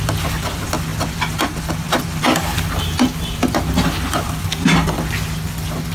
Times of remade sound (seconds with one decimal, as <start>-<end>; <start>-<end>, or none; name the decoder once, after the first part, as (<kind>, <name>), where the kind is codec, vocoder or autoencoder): none